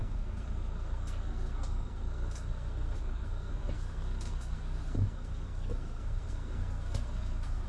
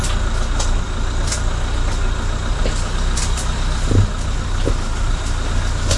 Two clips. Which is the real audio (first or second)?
second